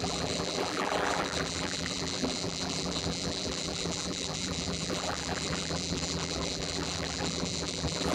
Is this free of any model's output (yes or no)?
no